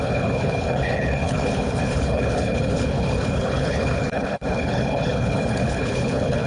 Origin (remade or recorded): remade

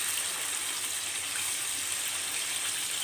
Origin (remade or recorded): recorded